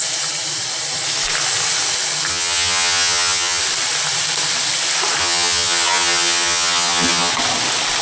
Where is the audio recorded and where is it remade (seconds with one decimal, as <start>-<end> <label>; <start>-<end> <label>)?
0.0-2.3 recorded; 2.3-3.6 remade; 3.6-5.2 recorded; 5.2-7.3 remade; 7.3-8.0 recorded